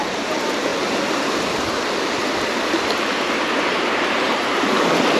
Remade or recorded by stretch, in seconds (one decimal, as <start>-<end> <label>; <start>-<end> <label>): 0.0-5.2 remade